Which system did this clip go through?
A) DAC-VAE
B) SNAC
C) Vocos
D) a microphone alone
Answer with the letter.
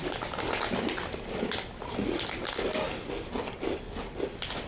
D